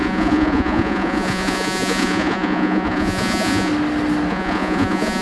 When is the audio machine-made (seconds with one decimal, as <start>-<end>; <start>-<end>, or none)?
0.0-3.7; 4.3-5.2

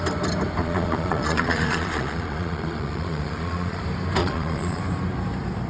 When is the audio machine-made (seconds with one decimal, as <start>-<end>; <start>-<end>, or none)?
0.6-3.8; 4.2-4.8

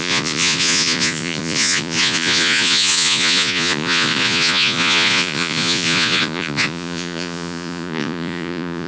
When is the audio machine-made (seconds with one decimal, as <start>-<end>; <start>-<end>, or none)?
0.0-8.9

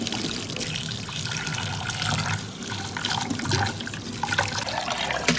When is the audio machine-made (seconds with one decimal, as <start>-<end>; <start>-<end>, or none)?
none

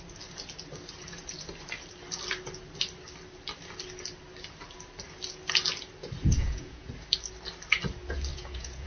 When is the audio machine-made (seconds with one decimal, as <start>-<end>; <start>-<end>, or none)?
6.2-6.9; 8.3-8.9

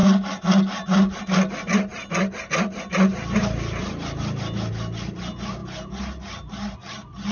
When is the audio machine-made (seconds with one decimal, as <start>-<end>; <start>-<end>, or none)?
none

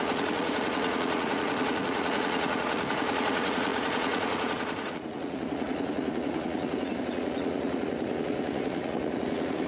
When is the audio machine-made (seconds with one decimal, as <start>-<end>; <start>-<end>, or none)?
0.0-9.7

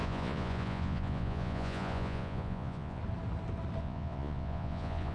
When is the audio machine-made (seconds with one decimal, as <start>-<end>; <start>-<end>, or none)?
0.0-3.0; 3.8-5.1